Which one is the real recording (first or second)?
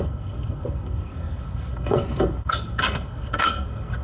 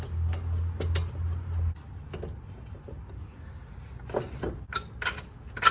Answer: second